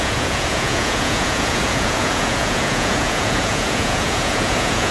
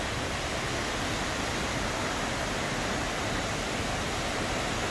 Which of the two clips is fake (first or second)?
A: first